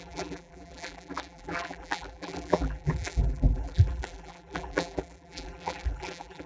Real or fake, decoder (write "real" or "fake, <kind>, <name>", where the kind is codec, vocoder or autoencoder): fake, vocoder, BigVGAN v2